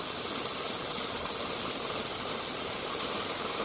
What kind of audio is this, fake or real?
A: real